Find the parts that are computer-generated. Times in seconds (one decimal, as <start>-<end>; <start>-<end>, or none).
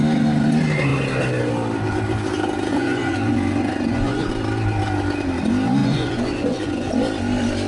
2.7-4.3; 5.8-6.9